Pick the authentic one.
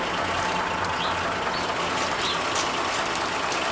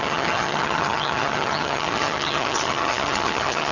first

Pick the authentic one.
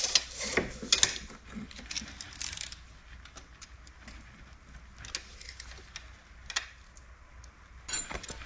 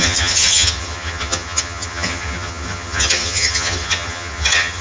first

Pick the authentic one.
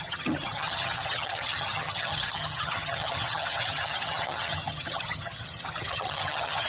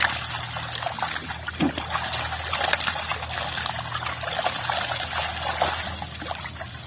second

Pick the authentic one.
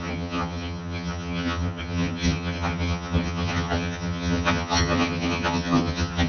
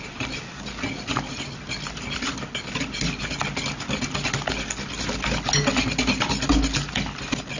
second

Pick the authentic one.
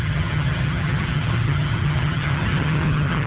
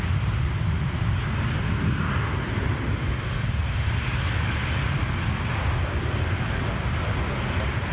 second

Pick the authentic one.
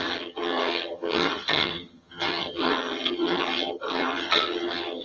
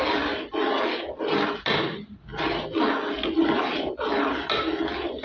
second